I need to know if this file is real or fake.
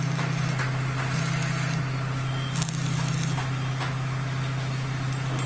real